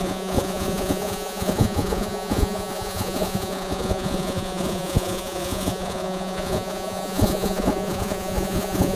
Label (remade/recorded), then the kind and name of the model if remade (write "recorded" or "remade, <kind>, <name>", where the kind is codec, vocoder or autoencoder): remade, vocoder, Vocos